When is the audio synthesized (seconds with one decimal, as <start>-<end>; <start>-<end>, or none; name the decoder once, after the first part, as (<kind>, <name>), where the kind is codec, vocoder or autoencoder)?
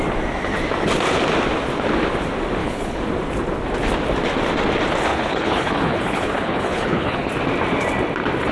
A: 2.6-3.1 (codec, HILCodec); 5.1-7.3